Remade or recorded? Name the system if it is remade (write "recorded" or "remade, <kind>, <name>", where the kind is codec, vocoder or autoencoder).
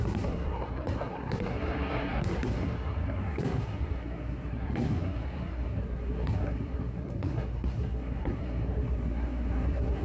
remade, codec, SNAC